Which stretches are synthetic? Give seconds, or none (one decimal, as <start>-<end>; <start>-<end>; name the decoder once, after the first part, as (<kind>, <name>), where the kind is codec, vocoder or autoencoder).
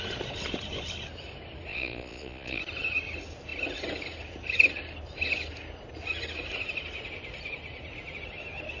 1.7-2.6 (vocoder, Vocos)